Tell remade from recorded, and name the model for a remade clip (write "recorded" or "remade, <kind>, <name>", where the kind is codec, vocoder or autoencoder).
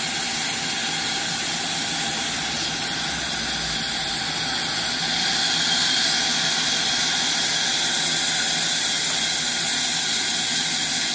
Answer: recorded